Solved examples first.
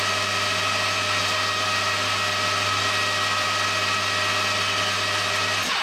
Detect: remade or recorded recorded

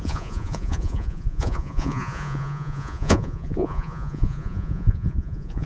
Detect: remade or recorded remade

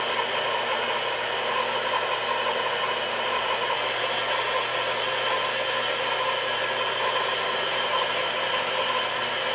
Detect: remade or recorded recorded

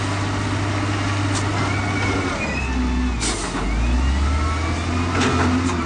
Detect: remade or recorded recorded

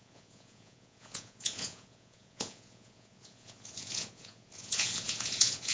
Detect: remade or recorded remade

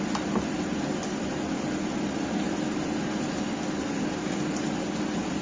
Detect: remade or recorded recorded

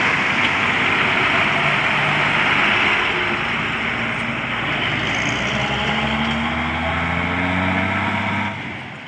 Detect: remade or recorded recorded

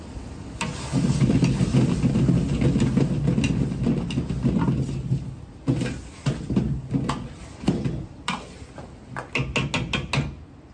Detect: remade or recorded recorded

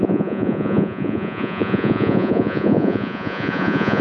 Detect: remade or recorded remade